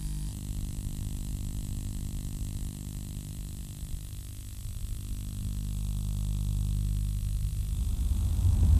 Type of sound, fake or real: real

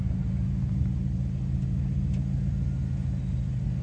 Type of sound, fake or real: real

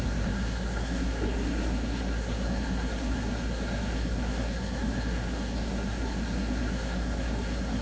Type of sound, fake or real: fake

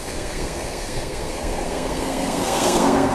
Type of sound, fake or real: fake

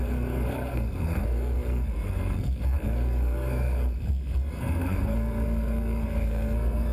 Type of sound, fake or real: fake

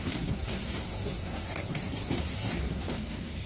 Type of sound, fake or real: fake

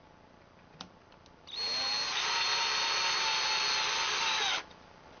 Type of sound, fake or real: real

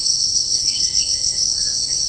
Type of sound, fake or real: fake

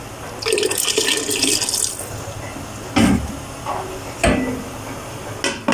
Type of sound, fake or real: real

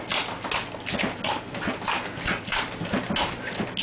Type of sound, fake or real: real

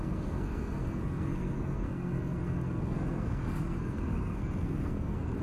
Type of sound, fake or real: fake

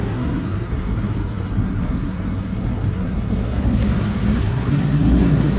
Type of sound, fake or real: fake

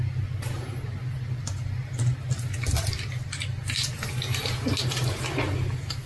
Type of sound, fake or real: real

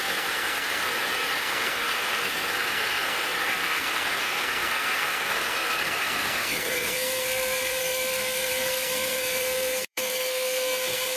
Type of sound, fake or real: fake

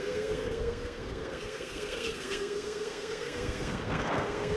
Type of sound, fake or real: fake